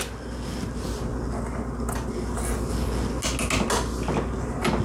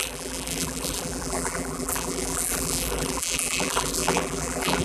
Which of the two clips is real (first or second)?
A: first